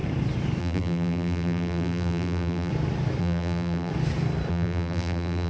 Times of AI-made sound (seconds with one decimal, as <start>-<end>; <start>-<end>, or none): 0.6-2.7; 3.2-3.9; 4.5-5.5